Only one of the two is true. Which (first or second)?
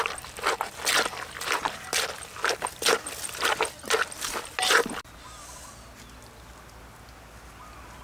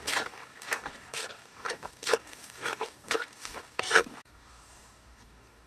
first